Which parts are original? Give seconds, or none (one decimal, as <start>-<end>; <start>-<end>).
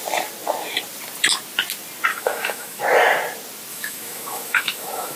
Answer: 0.0-2.1; 2.8-3.7